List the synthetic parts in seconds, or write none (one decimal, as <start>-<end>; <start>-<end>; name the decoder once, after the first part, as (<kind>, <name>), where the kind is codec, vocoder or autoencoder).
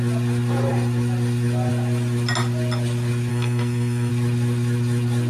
3.3-4.1 (codec, SNAC)